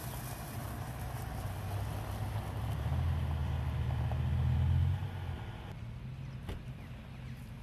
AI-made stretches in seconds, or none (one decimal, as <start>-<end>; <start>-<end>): none